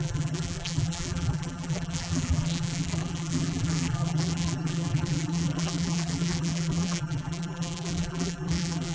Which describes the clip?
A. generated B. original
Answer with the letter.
A